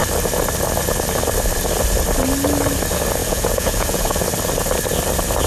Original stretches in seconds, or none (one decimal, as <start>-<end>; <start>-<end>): 0.0-3.2; 4.1-5.5

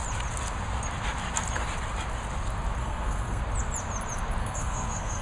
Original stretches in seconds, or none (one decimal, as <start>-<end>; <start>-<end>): 0.0-2.8; 3.4-4.4

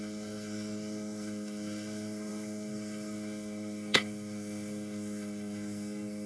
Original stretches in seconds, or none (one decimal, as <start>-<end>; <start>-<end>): none

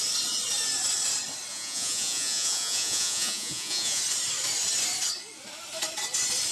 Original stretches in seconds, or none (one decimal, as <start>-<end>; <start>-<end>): 0.0-1.5; 4.0-6.5

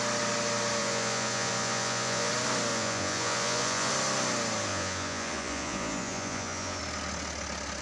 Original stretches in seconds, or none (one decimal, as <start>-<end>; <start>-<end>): 0.0-0.8; 2.3-2.7; 3.9-4.7; 6.8-7.8

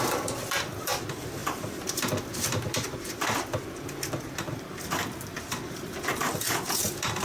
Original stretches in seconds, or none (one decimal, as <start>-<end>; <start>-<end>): none